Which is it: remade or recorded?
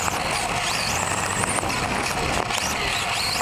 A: recorded